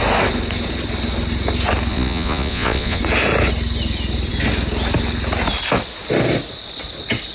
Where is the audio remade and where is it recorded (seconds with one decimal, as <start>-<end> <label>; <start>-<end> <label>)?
0.0-1.9 recorded; 1.9-3.0 remade; 3.0-7.3 recorded